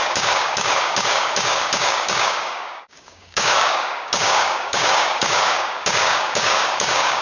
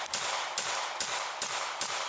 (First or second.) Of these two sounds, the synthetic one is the first